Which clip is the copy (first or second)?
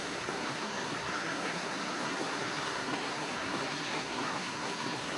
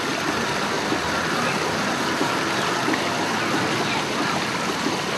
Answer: first